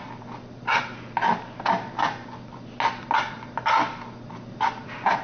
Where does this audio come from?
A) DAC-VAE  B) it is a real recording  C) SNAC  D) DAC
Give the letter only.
B